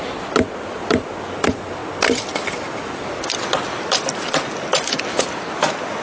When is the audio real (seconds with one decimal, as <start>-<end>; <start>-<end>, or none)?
0.0-6.0